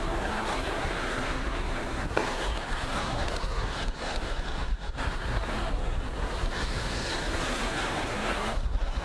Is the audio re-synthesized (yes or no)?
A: yes